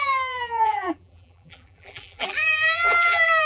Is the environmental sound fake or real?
fake